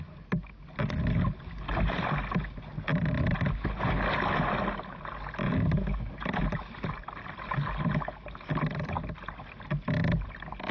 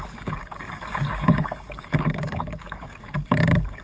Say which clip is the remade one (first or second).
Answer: second